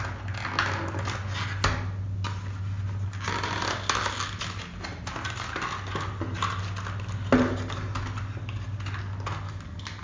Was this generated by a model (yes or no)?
no